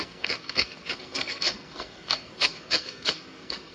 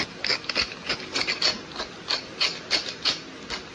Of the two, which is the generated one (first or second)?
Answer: first